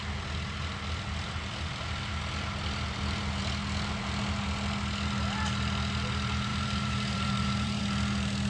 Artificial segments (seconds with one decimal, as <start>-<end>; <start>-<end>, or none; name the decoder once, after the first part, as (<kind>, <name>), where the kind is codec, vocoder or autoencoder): 6.5-7.8 (vocoder, BigVGAN v2)